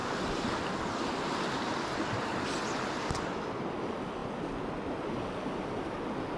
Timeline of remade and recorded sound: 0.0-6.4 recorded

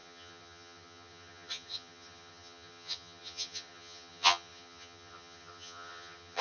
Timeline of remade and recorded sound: 0.0-6.4 remade

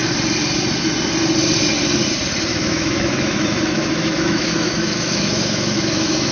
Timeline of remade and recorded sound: 0.0-2.5 recorded; 2.5-6.3 remade

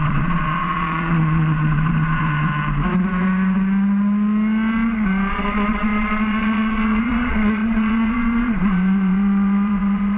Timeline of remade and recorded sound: 0.0-2.5 remade; 2.5-5.3 recorded; 5.3-10.2 remade

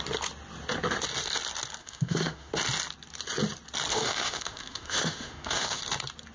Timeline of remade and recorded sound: 0.0-1.8 recorded; 1.8-2.5 remade; 2.5-3.9 recorded; 3.9-5.8 remade; 5.8-6.3 recorded

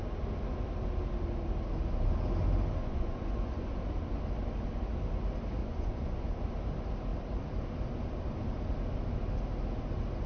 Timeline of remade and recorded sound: 0.0-2.8 recorded; 2.8-3.8 remade; 3.8-5.6 recorded; 5.6-6.4 remade; 6.4-10.3 recorded

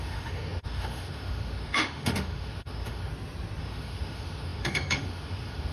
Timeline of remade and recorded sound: 0.0-3.1 remade; 3.1-3.6 recorded; 3.6-5.7 remade